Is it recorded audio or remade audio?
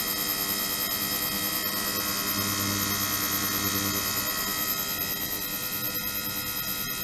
recorded